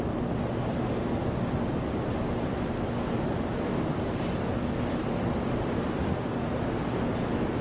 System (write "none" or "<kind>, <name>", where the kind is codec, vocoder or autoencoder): none